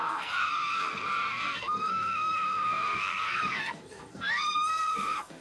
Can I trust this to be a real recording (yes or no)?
no